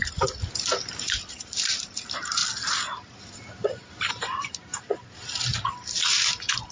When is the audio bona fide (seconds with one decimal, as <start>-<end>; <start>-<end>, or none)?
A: 0.4-1.1; 2.4-4.1; 4.7-6.3